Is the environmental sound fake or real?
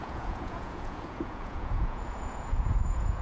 fake